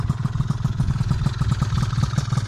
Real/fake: real